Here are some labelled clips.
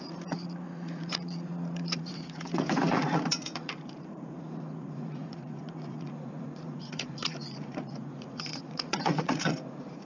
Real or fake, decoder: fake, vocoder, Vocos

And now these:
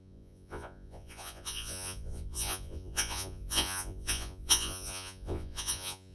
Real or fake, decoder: fake, vocoder, Vocos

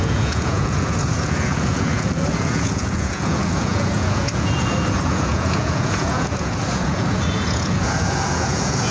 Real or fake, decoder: fake, vocoder, Vocos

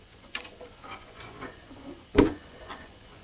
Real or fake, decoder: fake, vocoder, Vocos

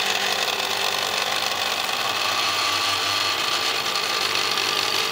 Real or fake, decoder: real